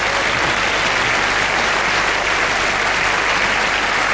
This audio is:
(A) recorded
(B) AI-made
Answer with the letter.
A